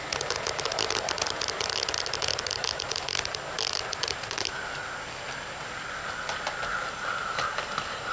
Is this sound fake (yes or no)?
no